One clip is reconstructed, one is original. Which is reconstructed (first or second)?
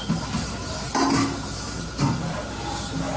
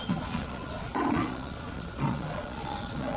second